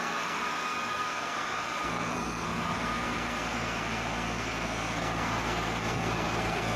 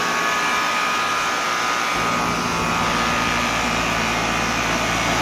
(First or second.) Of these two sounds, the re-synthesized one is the first